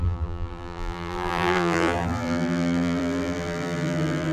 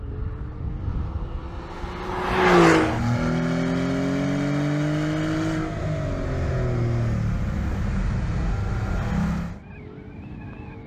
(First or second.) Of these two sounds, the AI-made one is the first